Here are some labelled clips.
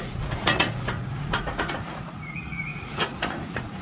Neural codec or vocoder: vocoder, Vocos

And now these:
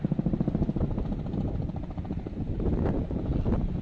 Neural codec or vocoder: none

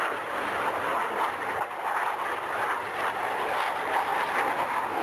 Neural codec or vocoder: none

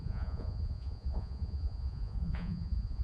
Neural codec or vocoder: vocoder, Vocos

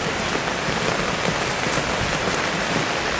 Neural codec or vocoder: none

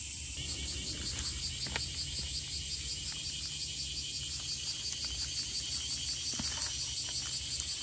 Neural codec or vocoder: none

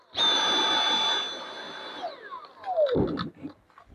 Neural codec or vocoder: none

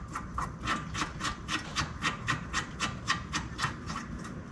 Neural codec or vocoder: none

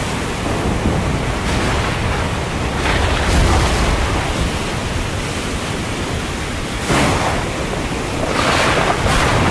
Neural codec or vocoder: none